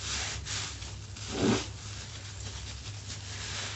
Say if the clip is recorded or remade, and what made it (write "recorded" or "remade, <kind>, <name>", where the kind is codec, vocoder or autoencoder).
recorded